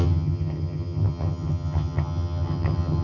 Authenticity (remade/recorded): remade